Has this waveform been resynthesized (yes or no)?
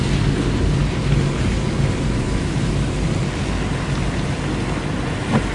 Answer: no